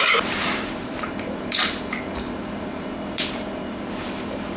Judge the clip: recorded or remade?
remade